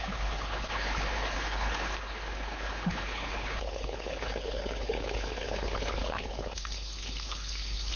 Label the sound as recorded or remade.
remade